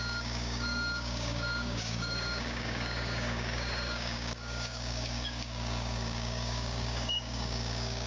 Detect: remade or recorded remade